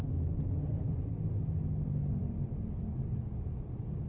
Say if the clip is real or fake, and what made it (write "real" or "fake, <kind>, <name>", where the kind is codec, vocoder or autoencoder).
real